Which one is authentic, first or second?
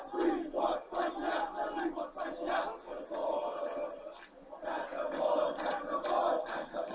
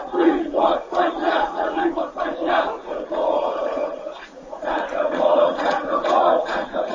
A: first